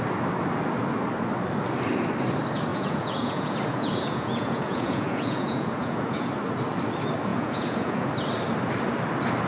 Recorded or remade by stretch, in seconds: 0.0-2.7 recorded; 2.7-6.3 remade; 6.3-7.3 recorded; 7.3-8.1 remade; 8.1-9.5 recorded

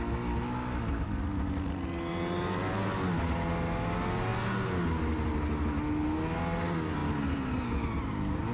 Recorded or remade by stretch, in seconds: 0.0-8.5 recorded

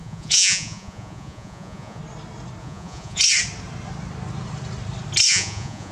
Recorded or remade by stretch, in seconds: 0.0-2.0 remade; 2.0-2.6 recorded; 2.6-3.2 remade; 3.2-5.3 recorded; 5.3-5.9 remade